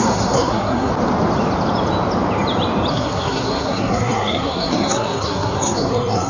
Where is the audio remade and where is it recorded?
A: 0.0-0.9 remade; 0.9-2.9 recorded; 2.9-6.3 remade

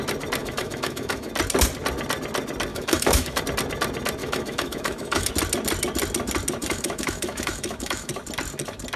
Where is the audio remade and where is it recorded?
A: 0.0-0.4 recorded; 0.4-1.3 remade; 1.3-2.7 recorded; 2.7-3.4 remade; 3.4-4.2 recorded; 4.2-5.3 remade; 5.3-6.6 recorded; 6.6-8.1 remade; 8.1-9.0 recorded

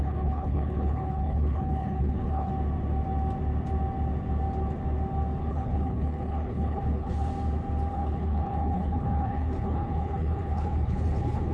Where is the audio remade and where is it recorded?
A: 0.0-2.5 remade; 2.5-5.4 recorded; 5.4-7.3 remade; 7.3-7.9 recorded; 7.9-11.5 remade